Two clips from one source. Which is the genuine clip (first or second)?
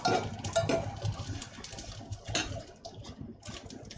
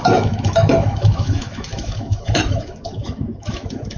first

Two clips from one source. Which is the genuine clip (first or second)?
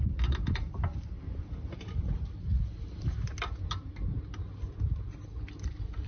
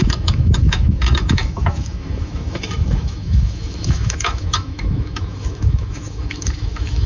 first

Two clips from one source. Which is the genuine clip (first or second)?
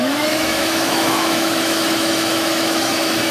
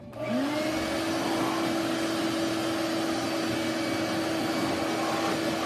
second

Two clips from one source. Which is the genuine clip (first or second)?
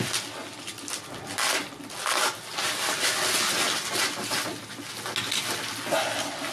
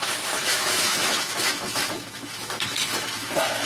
first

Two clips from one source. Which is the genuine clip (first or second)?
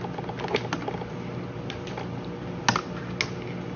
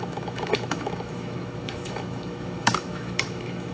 first